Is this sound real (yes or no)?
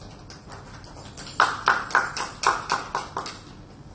yes